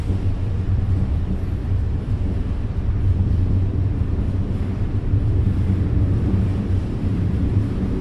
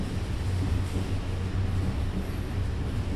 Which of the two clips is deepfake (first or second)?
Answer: first